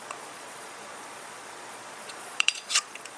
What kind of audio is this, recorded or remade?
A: remade